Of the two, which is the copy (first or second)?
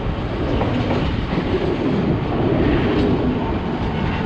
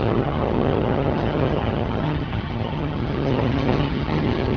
second